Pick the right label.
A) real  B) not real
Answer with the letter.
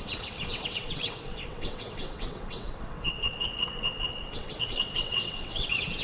B